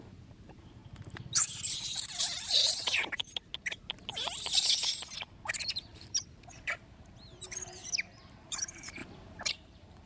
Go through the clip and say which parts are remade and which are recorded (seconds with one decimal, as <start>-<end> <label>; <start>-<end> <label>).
0.0-0.8 remade; 0.8-2.2 recorded; 2.2-3.5 remade; 3.5-5.7 recorded; 5.7-7.8 remade; 7.8-8.3 recorded; 8.3-9.0 remade; 9.0-9.5 recorded; 9.5-10.1 remade